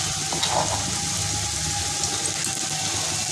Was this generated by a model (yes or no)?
no